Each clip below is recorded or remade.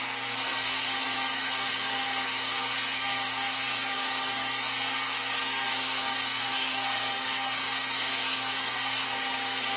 remade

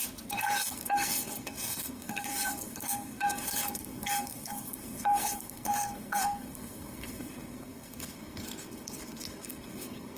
remade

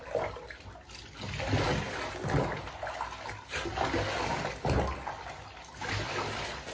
recorded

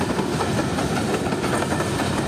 recorded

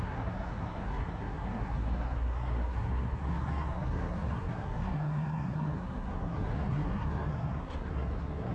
remade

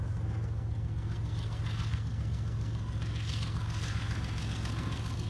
remade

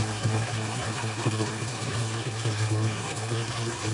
remade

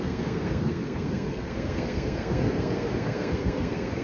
remade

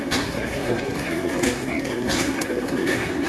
remade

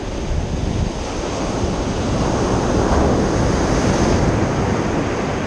recorded